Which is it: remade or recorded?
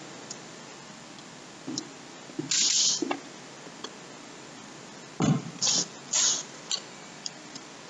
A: recorded